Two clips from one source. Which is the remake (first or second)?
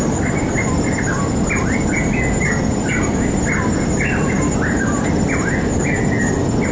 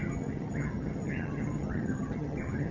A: second